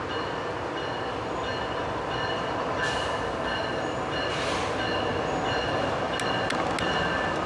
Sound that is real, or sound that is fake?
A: real